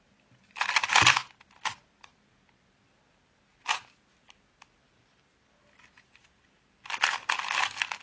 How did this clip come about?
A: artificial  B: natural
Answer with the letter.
B